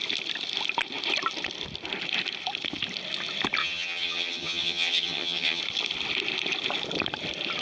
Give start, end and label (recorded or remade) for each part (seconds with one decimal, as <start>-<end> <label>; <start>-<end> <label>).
0.0-3.6 recorded; 3.6-5.6 remade; 5.6-7.6 recorded